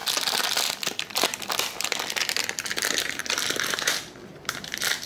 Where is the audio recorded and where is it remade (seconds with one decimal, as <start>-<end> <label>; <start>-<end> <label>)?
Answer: 0.0-5.1 remade